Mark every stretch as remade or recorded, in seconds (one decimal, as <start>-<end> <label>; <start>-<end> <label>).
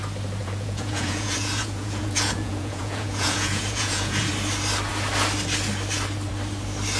0.0-0.4 recorded; 0.4-4.3 remade; 4.3-7.0 recorded